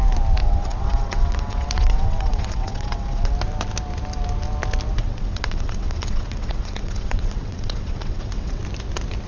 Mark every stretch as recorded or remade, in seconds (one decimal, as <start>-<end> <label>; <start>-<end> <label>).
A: 0.0-0.4 recorded; 0.4-3.3 remade; 3.3-5.0 recorded; 5.0-8.6 remade; 8.6-9.3 recorded